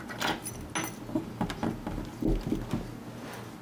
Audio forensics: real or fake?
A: real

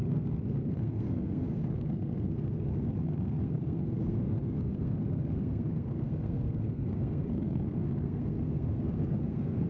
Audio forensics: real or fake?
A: fake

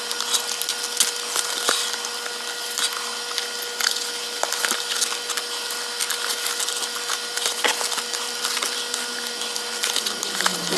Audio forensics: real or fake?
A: real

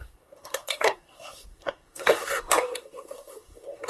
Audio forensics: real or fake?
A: fake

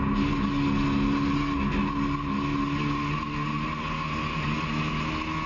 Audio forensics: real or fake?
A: real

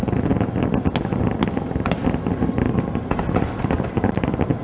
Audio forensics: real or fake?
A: real